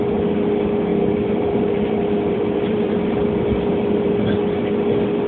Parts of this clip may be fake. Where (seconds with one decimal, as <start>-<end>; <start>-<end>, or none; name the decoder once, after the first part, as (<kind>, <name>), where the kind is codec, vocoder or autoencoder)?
0.9-4.1 (vocoder, BigVGAN v2)